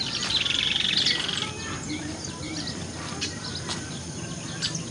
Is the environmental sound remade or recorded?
recorded